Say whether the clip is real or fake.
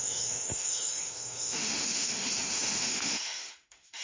fake